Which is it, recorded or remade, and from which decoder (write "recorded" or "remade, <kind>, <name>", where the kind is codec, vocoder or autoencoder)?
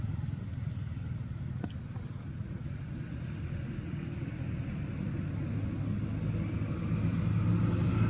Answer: recorded